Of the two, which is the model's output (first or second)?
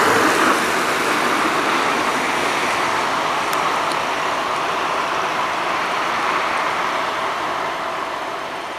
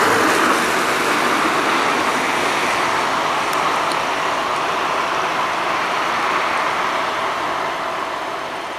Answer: first